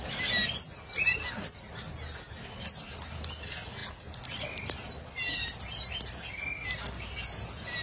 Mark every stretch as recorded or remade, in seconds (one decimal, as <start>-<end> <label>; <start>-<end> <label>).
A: 0.0-7.8 recorded